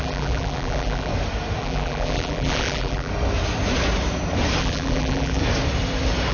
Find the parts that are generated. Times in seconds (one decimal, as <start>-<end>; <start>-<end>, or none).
0.0-1.1; 1.6-3.1; 4.6-5.4